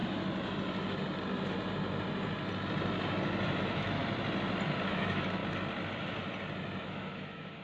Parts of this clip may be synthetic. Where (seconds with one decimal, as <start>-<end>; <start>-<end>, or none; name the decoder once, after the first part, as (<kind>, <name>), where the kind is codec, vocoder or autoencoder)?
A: 3.6-4.0 (autoencoder, DAC-VAE); 4.9-5.4; 6.8-7.6